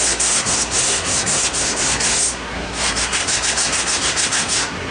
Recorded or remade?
remade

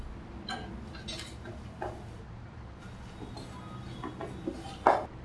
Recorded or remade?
recorded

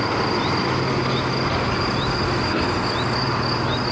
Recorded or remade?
recorded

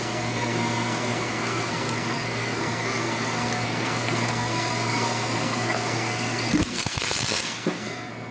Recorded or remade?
remade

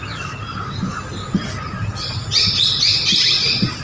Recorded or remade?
recorded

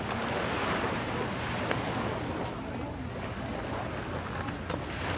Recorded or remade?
recorded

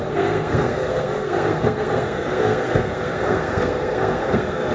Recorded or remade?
remade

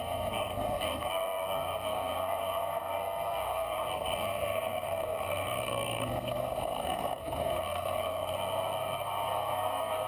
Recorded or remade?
remade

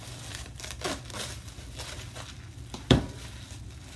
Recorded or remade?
recorded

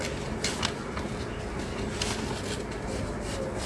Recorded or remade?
recorded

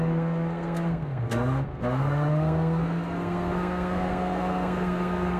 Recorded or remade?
remade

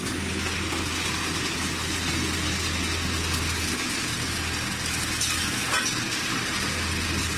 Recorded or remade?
recorded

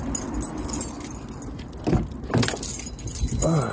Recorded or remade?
recorded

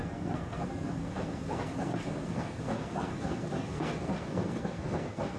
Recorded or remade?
remade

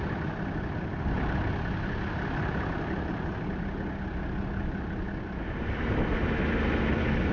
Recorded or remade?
recorded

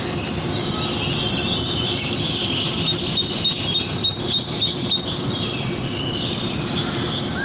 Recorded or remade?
recorded